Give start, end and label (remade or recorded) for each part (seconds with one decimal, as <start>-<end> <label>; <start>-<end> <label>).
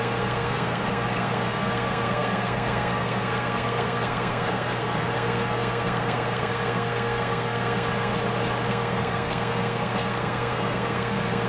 0.0-8.1 remade; 8.1-8.7 recorded; 8.7-11.5 remade